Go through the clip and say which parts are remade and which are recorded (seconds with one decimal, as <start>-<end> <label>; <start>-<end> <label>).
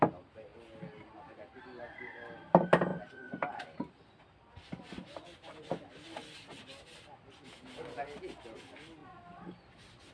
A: 0.0-10.1 recorded